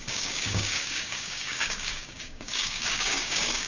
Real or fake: fake